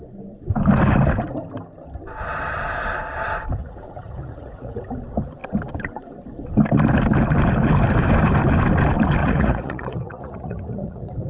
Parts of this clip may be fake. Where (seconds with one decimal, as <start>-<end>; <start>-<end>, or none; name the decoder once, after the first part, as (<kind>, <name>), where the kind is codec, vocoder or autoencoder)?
3.6-4.8 (vocoder, Vocos); 9.2-11.3